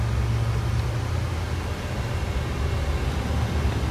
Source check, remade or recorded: recorded